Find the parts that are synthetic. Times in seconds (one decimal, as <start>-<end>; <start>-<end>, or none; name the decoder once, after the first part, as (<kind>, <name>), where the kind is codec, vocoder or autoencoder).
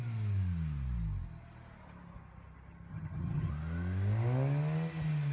2.9-3.5 (vocoder, HiFi-GAN)